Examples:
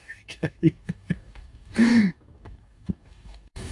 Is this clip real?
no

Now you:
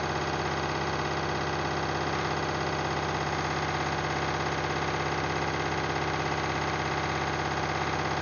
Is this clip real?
yes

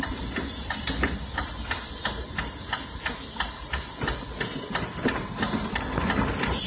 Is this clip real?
yes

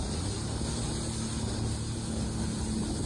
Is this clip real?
yes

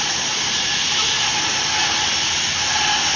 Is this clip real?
yes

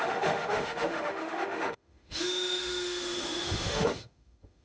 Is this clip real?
no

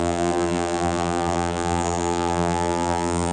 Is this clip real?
no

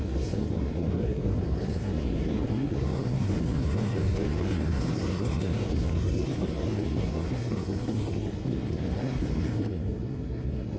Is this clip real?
no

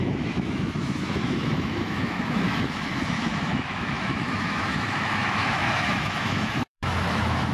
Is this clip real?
no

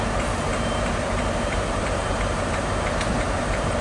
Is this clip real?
no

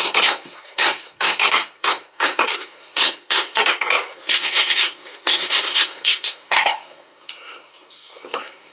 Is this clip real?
no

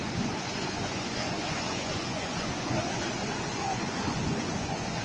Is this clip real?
no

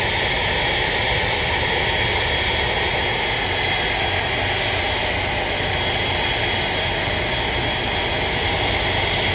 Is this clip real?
yes